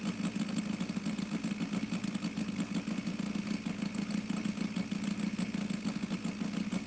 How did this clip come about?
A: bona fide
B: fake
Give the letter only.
A